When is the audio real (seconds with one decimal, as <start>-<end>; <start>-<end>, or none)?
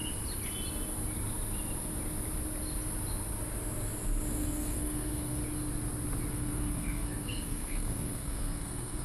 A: 0.0-4.3; 5.4-6.3